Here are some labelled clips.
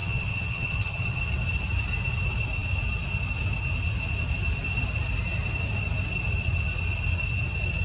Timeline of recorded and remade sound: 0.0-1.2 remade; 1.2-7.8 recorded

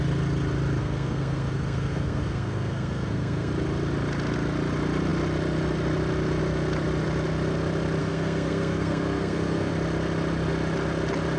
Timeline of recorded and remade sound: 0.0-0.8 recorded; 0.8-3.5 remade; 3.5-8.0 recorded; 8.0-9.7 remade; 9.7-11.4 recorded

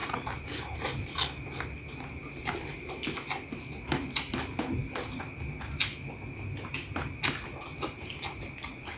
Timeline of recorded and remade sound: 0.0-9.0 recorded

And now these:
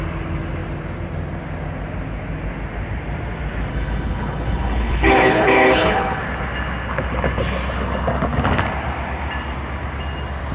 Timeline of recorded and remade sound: 0.0-3.7 recorded; 3.7-6.2 remade; 6.2-10.5 recorded

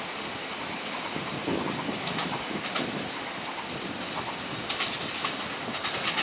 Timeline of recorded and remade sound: 0.0-6.2 recorded

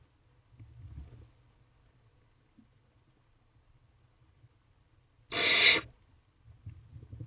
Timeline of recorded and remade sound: 0.0-7.3 recorded